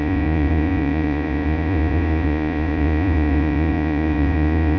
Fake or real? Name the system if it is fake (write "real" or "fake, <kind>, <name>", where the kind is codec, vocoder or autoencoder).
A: fake, vocoder, Vocos